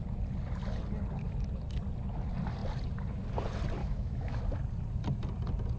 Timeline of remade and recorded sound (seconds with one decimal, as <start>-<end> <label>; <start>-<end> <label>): 0.0-3.8 recorded; 3.8-4.4 remade; 4.4-5.8 recorded